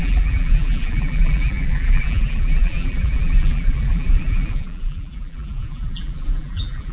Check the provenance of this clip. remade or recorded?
remade